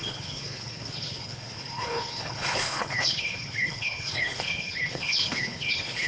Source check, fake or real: fake